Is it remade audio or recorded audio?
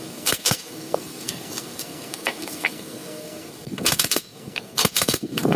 remade